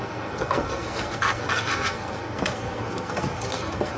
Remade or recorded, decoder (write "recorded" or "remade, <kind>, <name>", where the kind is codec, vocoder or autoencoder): remade, codec, SNAC